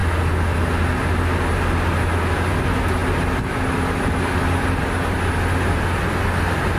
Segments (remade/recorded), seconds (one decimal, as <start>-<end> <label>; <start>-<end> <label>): 0.0-6.8 recorded